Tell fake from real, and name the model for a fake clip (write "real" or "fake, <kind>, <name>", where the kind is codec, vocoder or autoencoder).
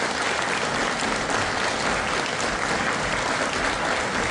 real